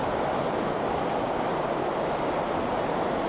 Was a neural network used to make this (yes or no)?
no